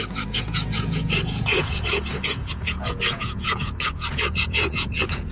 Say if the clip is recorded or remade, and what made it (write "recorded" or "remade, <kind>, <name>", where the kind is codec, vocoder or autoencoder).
remade, vocoder, Vocos